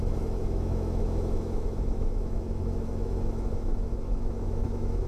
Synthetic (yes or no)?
yes